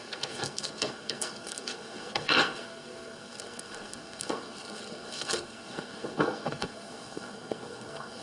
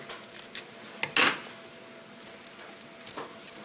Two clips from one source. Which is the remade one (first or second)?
first